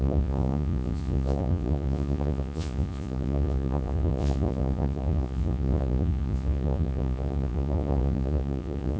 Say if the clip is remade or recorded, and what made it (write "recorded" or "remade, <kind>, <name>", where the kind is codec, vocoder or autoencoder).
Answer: remade, vocoder, Vocos